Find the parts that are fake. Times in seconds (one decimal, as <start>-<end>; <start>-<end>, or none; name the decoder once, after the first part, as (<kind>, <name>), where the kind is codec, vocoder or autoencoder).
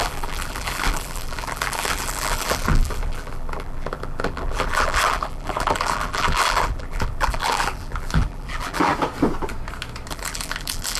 0.0-8.9 (vocoder, BigVGAN v2); 10.1-11.0